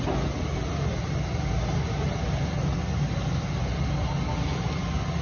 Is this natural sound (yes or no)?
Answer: yes